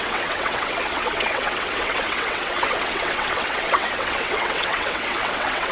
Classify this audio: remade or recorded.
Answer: remade